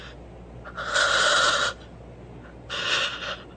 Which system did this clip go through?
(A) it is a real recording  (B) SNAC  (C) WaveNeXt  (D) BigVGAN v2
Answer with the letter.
A